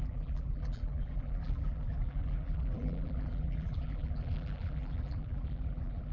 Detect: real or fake fake